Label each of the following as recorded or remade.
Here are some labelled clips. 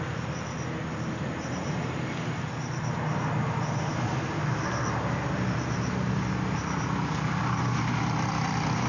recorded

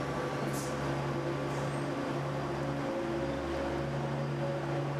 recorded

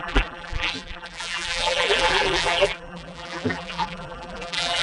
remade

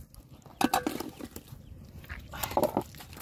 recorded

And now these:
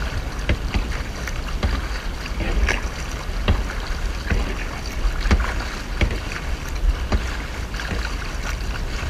recorded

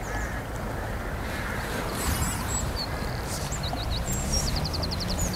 remade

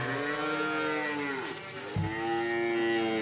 recorded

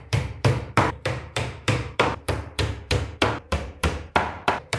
remade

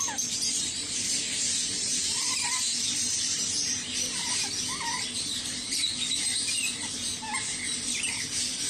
remade